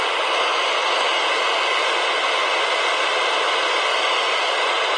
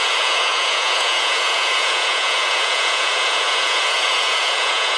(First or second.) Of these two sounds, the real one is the first